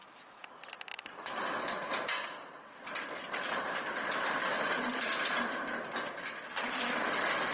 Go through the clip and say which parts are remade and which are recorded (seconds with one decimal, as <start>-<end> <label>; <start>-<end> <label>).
0.0-1.0 recorded; 1.0-7.5 remade